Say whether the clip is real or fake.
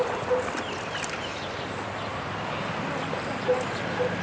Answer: real